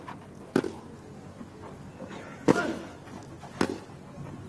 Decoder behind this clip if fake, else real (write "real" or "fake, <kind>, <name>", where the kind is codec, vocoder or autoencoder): real